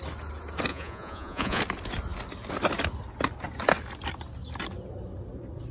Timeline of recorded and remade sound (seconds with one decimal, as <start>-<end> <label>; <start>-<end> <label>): 0.0-0.7 recorded; 0.7-1.6 remade; 1.6-5.7 recorded